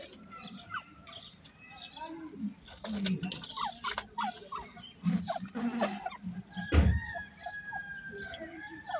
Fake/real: real